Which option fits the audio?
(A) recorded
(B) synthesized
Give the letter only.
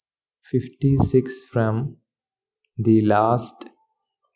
A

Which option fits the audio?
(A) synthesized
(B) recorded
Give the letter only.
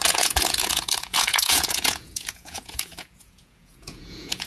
A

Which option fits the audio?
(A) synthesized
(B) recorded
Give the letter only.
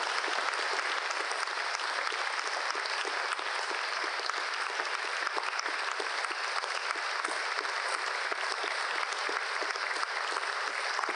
B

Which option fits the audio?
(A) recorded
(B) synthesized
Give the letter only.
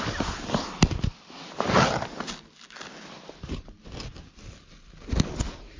A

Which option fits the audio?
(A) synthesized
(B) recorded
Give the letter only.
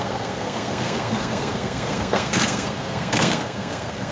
A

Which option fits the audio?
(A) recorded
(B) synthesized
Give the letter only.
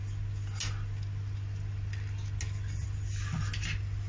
A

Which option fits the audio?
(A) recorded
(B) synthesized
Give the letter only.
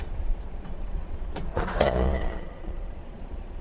B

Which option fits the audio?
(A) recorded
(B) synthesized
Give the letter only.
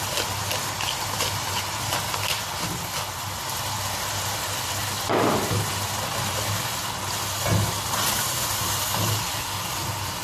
A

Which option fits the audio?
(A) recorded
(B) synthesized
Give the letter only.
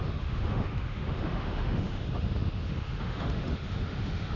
B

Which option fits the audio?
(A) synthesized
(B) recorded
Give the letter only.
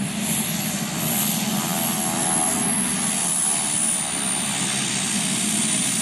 B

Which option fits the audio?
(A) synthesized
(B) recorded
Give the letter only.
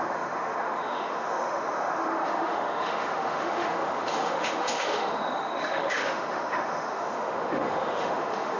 A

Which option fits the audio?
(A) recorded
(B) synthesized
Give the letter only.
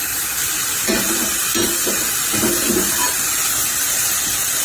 A